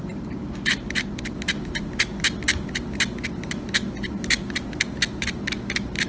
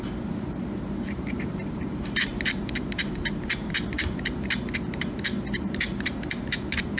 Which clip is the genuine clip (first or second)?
first